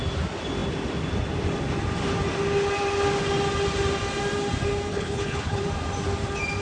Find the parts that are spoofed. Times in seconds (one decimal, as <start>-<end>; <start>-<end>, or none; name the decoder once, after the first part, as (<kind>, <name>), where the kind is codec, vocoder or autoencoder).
4.9-5.6 (codec, HILCodec)